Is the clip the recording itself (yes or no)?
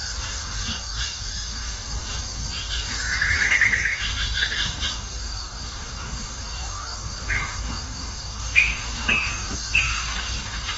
no